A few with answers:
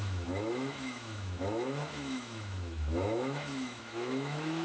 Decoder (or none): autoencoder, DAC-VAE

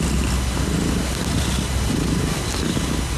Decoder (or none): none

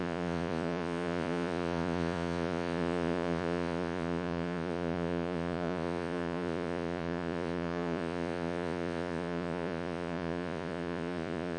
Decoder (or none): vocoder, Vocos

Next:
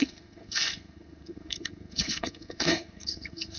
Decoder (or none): codec, SNAC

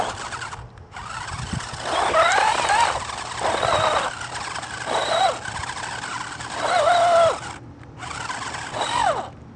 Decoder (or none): none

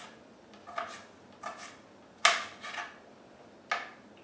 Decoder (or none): none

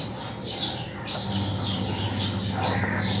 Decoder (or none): none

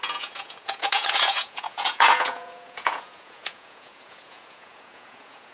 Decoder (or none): vocoder, Vocos